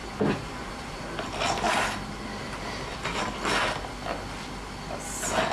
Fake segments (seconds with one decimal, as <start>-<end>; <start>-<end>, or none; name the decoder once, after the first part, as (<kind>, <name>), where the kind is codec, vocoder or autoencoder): 0.0-1.0 (vocoder, BigVGAN v2); 2.4-3.2